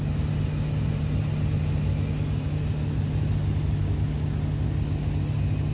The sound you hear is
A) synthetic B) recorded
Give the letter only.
B